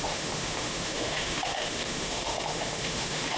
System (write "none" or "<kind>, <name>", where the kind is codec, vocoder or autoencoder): autoencoder, DAC-VAE